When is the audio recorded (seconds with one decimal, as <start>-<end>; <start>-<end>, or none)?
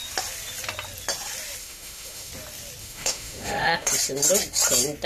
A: 0.0-1.6; 2.3-2.8; 3.9-5.1